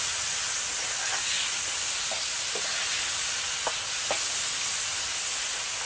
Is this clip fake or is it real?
real